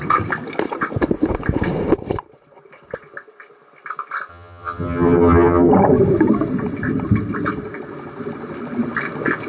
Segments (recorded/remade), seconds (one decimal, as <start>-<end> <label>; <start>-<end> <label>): 0.0-4.3 recorded; 4.3-5.7 remade; 5.7-9.5 recorded